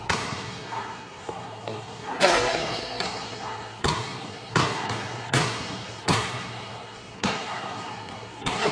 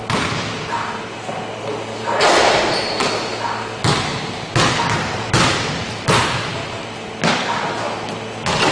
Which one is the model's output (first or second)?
first